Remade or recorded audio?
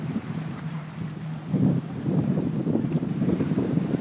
remade